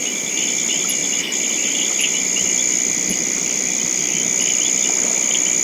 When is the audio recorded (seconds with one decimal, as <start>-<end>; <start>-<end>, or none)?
0.0-5.6